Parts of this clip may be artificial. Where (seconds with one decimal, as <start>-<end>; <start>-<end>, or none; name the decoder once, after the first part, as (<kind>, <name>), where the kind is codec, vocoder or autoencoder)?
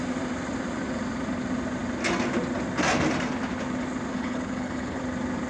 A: 4.1-5.0 (codec, HILCodec)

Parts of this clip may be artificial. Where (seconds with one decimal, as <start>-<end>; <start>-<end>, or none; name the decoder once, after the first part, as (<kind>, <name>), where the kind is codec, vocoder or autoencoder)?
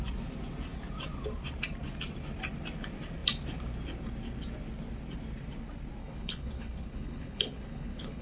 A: 6.0-8.2 (codec, HILCodec)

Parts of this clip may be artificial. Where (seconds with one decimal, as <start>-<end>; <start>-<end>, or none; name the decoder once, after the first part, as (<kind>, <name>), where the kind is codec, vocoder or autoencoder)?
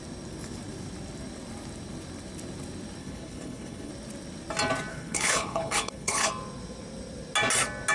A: 3.0-3.9 (codec, HILCodec); 4.9-6.3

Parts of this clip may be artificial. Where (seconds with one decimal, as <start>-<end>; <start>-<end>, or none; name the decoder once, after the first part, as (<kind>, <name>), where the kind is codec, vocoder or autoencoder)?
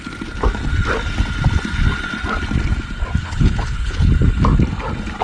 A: 3.2-4.1 (codec, HILCodec)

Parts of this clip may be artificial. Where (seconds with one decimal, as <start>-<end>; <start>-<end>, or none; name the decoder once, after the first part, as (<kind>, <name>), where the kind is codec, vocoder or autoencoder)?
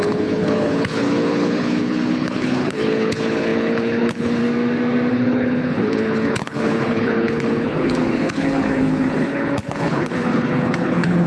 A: 0.0-4.4 (codec, HILCodec); 5.1-11.3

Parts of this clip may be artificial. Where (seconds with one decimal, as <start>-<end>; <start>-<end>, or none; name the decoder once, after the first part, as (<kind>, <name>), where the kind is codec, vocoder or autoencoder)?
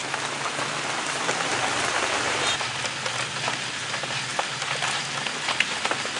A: none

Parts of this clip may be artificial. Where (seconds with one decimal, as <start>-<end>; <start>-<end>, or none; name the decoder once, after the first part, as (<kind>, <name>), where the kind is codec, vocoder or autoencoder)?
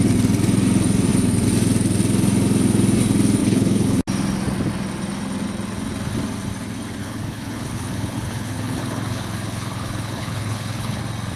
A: 3.4-4.0 (codec, HILCodec); 7.0-11.0